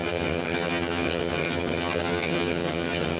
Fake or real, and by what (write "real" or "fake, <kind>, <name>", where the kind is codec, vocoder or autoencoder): fake, vocoder, HiFi-GAN